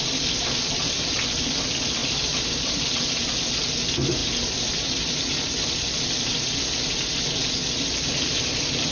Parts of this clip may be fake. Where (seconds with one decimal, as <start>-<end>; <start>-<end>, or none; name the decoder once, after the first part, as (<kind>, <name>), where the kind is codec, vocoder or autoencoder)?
2.0-2.8 (vocoder, BigVGAN v2); 4.2-6.8